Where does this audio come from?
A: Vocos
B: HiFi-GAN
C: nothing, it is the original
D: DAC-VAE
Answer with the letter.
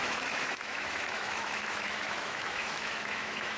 D